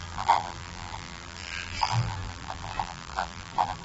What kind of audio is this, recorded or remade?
remade